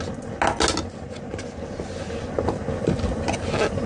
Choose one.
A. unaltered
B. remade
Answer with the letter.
A